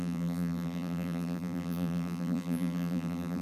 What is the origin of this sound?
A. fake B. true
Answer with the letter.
A